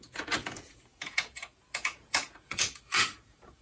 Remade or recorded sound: remade